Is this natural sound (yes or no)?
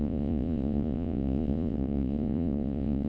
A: no